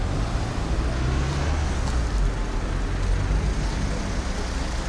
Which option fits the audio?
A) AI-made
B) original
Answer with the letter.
B